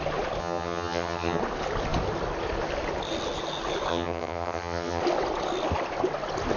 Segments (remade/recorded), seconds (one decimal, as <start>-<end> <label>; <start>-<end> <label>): 0.0-0.4 recorded; 0.4-1.4 remade; 1.4-3.9 recorded; 3.9-5.0 remade; 5.0-6.6 recorded